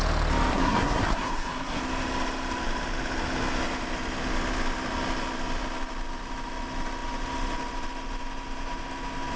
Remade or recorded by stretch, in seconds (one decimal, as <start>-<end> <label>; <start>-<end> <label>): 0.0-0.5 recorded; 0.5-1.8 remade; 1.8-9.4 recorded